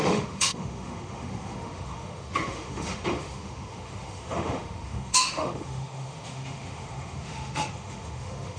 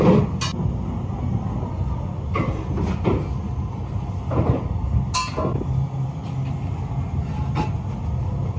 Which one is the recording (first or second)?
second